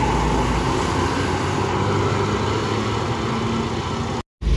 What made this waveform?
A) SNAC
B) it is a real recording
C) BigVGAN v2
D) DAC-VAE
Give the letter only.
B